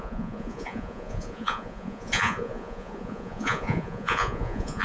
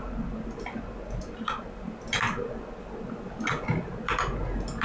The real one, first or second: second